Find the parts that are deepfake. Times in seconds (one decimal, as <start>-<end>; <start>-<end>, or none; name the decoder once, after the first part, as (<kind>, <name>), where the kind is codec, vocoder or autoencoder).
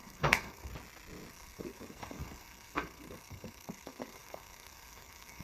0.0-0.7 (codec, SNAC); 1.3-5.4